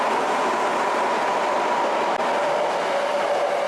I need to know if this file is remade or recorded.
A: recorded